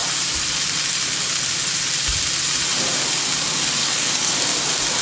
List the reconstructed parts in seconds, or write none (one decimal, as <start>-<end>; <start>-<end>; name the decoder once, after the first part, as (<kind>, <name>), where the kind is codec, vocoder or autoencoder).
3.8-4.3 (codec, DAC)